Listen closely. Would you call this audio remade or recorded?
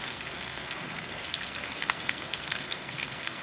remade